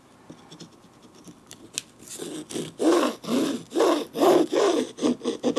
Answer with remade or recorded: recorded